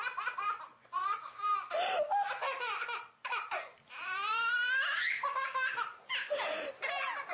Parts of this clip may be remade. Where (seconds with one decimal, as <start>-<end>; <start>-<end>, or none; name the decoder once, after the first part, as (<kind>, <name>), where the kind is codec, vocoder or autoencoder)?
0.7-1.3 (vocoder, Vocos)